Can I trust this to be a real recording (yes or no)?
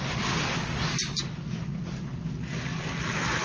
yes